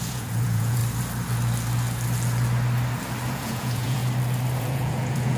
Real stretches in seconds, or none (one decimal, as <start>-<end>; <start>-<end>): 0.8-3.3; 4.0-4.6